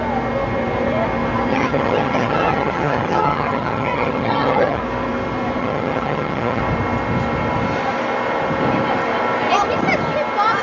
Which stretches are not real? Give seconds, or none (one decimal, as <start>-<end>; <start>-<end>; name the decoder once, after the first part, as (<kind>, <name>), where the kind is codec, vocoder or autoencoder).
1.5-4.8 (vocoder, HiFi-GAN); 5.6-6.6